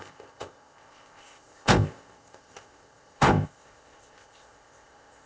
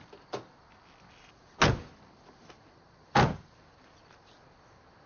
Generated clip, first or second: first